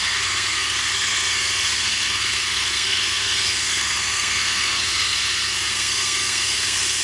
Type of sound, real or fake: fake